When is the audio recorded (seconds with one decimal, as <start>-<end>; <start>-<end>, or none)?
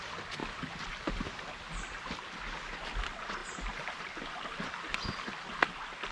0.0-6.1